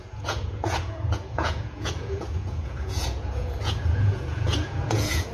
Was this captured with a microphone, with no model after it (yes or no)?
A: no